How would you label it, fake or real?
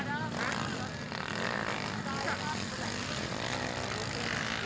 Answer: real